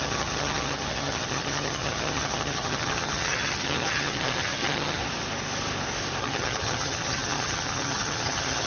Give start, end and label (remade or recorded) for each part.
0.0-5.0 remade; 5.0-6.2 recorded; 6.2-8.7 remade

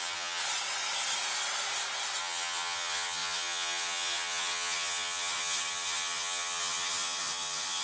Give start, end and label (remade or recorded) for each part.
0.0-0.4 remade; 0.4-2.2 recorded; 2.2-7.8 remade